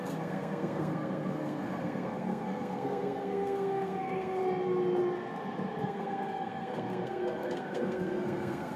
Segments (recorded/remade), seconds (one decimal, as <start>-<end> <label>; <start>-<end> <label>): 0.0-4.4 remade; 4.4-5.8 recorded; 5.8-8.8 remade